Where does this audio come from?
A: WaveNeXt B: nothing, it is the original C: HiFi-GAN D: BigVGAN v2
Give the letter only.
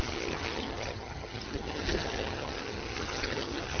C